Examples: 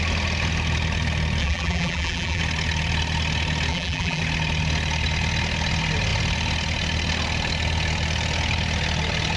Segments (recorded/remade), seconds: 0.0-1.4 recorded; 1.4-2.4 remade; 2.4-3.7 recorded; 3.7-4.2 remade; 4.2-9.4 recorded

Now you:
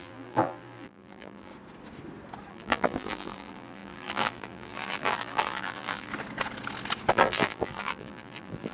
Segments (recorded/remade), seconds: 0.0-1.5 remade; 1.5-2.5 recorded; 2.5-6.1 remade; 6.1-7.1 recorded; 7.1-8.7 remade

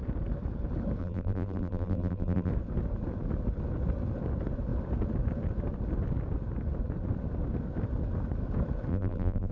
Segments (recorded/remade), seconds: 0.0-1.0 recorded; 1.0-2.5 remade; 2.5-8.9 recorded; 8.9-9.5 remade

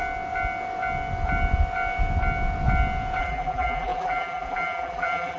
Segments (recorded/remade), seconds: 0.0-3.2 recorded; 3.2-5.4 remade